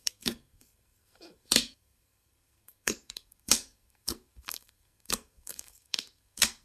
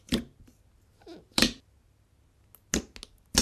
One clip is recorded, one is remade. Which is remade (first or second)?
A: first